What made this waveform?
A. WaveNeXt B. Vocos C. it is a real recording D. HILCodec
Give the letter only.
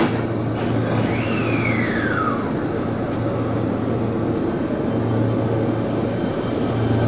C